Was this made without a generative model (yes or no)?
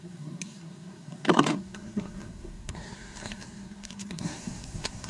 no